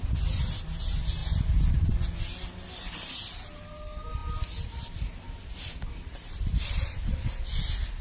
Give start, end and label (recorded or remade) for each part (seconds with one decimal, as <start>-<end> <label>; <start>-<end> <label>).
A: 0.0-8.0 recorded